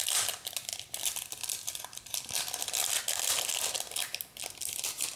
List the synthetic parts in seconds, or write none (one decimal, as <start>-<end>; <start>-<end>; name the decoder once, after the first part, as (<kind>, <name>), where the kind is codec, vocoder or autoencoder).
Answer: none